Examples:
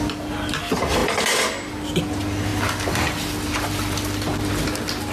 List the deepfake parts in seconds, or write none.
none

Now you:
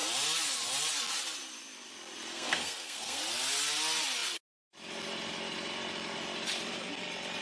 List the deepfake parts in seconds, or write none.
2.3-3.2